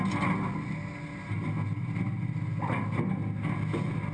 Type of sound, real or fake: real